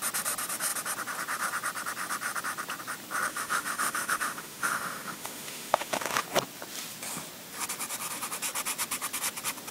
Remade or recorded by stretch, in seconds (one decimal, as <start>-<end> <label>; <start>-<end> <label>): 0.0-3.3 recorded; 3.3-6.2 remade; 6.2-9.7 recorded